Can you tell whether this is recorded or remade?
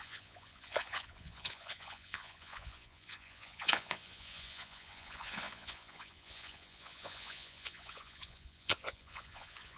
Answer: remade